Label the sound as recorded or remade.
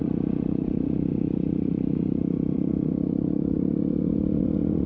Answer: remade